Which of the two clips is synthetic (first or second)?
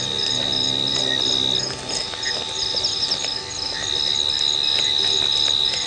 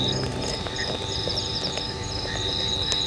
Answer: second